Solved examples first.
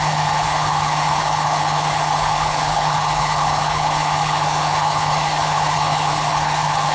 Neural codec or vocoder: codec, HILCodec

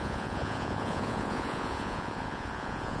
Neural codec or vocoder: vocoder, Vocos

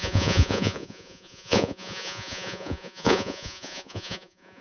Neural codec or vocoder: vocoder, Vocos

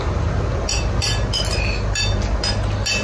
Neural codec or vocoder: none